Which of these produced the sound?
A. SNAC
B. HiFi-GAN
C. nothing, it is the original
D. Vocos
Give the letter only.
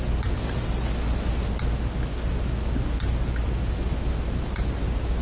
C